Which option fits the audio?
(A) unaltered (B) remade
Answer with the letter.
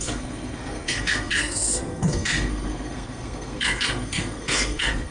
B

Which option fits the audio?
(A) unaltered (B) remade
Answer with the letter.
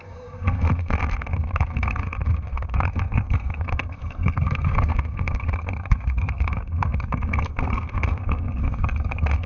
B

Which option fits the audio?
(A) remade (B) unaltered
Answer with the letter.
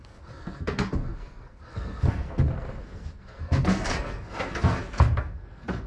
A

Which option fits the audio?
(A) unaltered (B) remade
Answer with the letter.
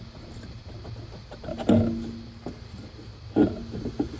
A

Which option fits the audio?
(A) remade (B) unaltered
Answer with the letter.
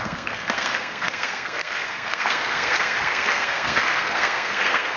A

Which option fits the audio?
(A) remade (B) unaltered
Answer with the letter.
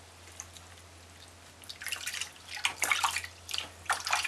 B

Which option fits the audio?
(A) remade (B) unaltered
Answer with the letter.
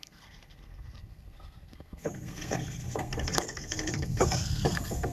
A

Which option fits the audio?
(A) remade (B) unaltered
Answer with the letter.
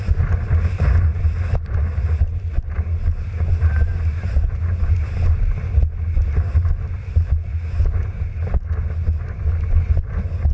B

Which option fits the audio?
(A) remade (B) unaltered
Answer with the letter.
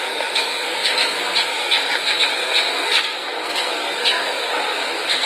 A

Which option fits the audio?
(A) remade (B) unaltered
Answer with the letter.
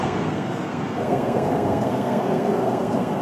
A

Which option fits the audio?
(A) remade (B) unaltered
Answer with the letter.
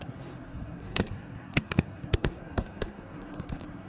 A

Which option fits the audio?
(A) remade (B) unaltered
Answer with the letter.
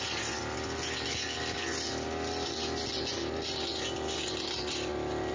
B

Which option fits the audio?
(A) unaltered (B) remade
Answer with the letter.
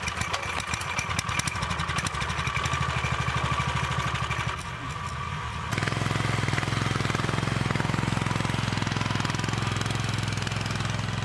A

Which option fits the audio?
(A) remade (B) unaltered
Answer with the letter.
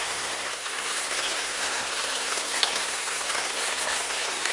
A